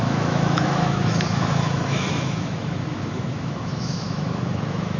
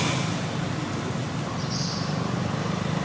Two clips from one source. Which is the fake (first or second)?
first